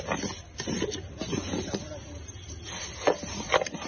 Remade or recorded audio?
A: recorded